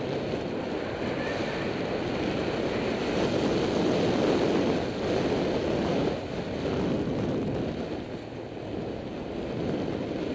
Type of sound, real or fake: real